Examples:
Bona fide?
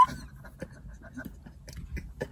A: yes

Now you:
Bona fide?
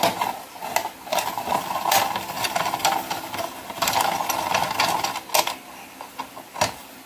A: yes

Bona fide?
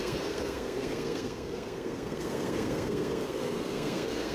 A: no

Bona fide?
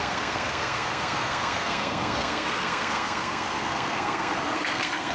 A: no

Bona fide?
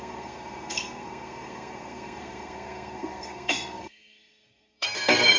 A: no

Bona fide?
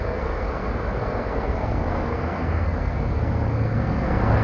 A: no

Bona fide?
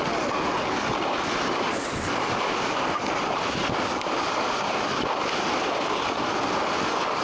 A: yes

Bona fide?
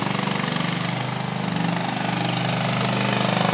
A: yes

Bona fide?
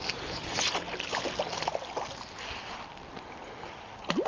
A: yes